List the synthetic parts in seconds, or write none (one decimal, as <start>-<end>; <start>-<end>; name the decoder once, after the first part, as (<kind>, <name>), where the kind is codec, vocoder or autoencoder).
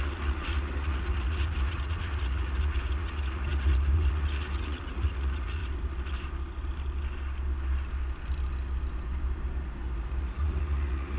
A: 0.0-5.6 (vocoder, Vocos); 10.2-11.2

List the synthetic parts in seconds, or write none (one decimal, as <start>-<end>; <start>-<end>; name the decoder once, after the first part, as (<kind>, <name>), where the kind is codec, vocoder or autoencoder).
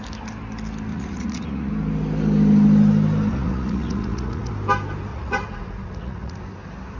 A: 0.9-1.7 (vocoder, Vocos); 3.3-4.5; 5.1-6.4